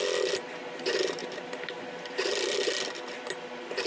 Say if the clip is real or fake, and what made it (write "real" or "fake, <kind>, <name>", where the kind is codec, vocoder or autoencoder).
real